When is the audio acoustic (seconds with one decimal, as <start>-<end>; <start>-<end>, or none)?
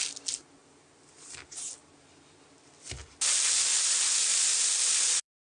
0.0-0.6; 1.7-5.6